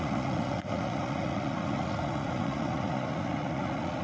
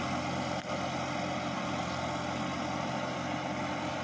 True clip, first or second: second